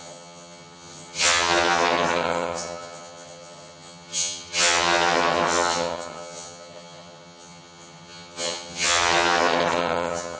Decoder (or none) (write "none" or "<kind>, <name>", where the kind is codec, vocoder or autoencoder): vocoder, HiFi-GAN